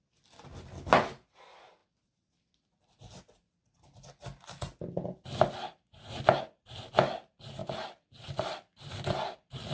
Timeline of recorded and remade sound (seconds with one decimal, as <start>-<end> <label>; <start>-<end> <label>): 0.0-9.7 recorded